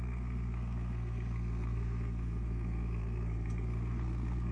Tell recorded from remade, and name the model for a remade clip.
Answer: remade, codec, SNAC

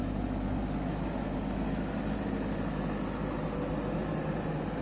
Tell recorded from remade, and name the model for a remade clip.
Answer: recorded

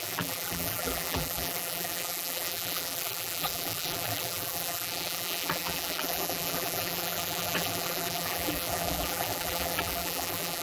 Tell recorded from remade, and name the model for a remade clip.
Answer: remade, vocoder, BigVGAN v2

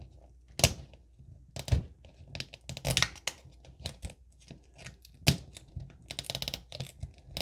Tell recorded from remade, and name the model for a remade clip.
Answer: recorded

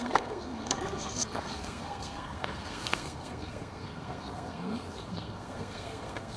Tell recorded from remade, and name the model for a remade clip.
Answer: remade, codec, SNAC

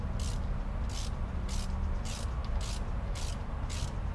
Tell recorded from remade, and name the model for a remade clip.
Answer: recorded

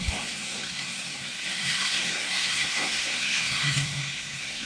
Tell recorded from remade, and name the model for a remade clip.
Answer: remade, codec, SNAC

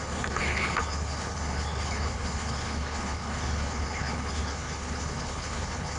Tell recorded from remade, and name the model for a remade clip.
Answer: remade, codec, HILCodec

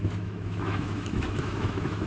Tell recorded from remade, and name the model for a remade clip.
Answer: remade, autoencoder, DAC-VAE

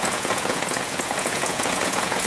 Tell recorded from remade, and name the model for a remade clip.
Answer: remade, vocoder, Vocos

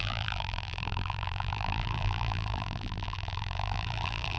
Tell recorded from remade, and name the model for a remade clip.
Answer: remade, vocoder, BigVGAN v2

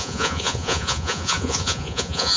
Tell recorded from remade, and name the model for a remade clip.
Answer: remade, vocoder, Vocos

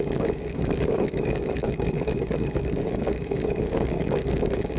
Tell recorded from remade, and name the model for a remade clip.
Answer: remade, codec, DAC